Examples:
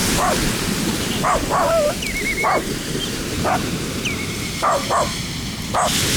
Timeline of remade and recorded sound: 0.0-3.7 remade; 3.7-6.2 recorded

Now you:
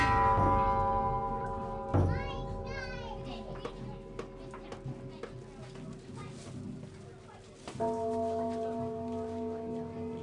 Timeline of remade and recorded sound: 0.0-10.2 recorded

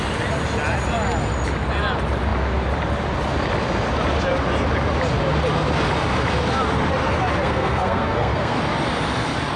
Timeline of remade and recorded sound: 0.0-7.4 recorded; 7.4-8.6 remade; 8.6-9.6 recorded

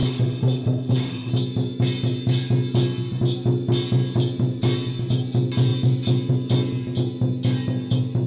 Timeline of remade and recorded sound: 0.0-1.3 remade; 1.3-8.3 recorded